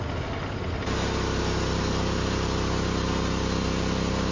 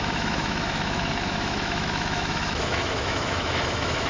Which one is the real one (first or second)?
first